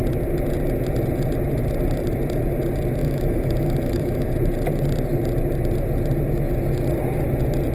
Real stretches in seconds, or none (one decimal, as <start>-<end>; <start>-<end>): 0.0-3.0; 4.3-7.7